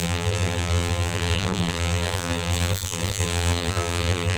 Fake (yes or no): yes